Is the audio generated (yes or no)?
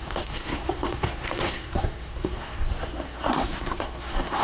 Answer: yes